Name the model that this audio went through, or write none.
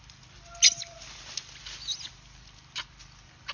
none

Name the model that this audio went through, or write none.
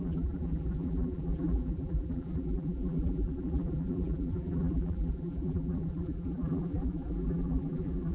vocoder, BigVGAN v2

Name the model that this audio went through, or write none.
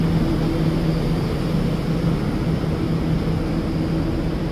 none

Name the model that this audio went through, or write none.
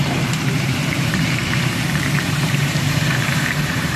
vocoder, BigVGAN v2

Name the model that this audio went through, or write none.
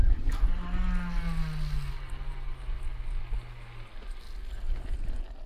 none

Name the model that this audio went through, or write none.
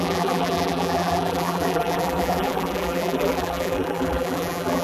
vocoder, BigVGAN v2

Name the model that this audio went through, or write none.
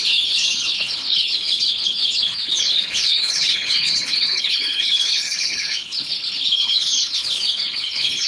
codec, HILCodec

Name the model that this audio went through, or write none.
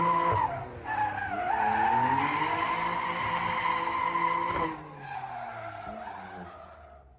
none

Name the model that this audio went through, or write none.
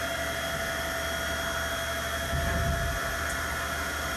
none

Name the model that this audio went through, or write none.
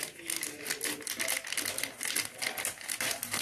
none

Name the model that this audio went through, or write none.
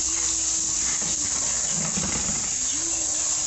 none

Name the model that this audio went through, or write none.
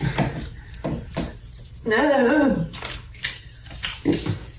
vocoder, BigVGAN v2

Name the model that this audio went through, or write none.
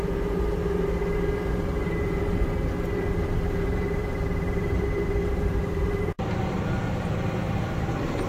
vocoder, BigVGAN v2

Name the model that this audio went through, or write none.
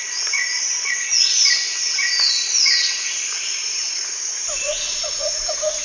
vocoder, Vocos